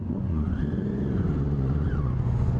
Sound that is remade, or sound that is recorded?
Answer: remade